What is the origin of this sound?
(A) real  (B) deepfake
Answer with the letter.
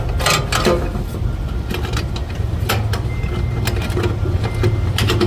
A